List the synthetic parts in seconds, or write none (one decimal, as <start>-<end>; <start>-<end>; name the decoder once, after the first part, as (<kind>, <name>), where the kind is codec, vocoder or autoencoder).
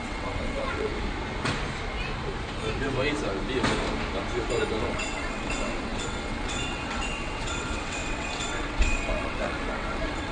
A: 0.0-0.9 (vocoder, WaveNeXt); 4.8-10.3